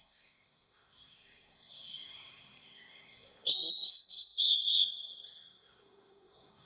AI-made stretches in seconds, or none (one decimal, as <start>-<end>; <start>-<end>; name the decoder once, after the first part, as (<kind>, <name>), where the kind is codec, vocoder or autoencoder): 0.0-6.7 (codec, SNAC)